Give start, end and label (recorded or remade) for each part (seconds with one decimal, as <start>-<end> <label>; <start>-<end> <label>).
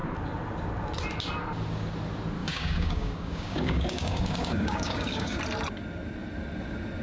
0.0-2.4 recorded; 2.4-5.4 remade; 5.4-7.0 recorded